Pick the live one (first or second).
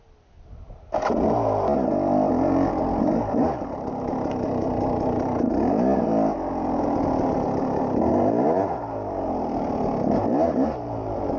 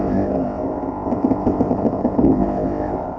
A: first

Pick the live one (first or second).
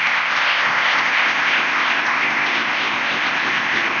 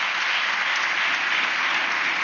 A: second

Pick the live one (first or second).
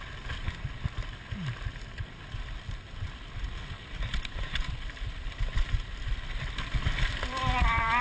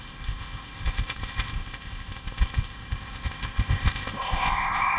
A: first